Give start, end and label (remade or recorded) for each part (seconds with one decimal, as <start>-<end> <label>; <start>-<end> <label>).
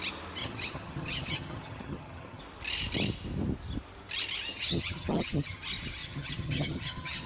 0.0-0.4 recorded; 0.4-2.4 remade; 2.4-4.5 recorded; 4.5-5.6 remade; 5.6-6.0 recorded; 6.0-7.3 remade